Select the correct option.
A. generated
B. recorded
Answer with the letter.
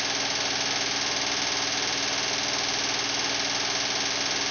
B